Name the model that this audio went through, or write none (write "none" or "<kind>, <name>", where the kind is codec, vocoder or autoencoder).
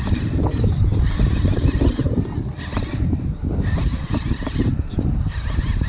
vocoder, BigVGAN v2